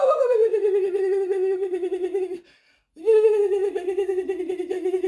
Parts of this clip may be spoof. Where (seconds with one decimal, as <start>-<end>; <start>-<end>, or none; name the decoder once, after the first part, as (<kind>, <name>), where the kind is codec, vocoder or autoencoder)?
none